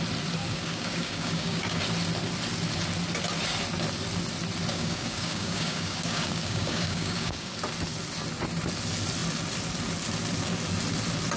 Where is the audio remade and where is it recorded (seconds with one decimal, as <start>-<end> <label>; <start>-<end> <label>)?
0.0-0.4 recorded; 0.4-1.8 remade; 1.8-4.7 recorded; 4.7-7.5 remade; 7.5-11.4 recorded

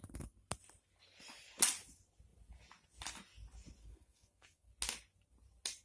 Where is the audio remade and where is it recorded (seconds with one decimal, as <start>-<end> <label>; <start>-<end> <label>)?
0.0-3.8 recorded; 3.8-4.7 remade; 4.7-5.8 recorded

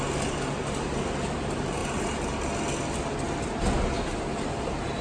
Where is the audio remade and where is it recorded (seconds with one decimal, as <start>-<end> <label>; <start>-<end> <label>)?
0.0-5.0 recorded

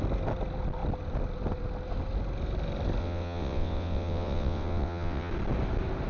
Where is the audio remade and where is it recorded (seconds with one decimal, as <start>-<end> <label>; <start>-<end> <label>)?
0.0-3.0 recorded; 3.0-5.3 remade; 5.3-6.1 recorded

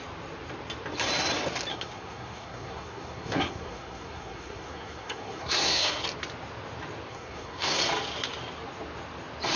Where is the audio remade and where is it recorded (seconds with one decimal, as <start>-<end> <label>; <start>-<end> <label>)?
0.0-1.7 recorded; 1.7-6.0 remade; 6.0-7.1 recorded; 7.1-7.8 remade; 7.8-9.6 recorded

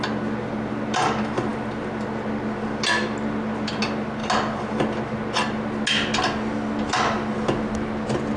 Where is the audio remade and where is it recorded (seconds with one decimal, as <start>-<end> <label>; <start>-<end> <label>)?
0.0-8.4 recorded